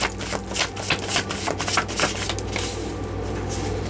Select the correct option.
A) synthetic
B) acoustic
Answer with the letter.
B